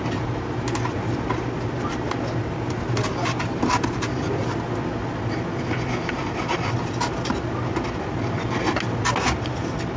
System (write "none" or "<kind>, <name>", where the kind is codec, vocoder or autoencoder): none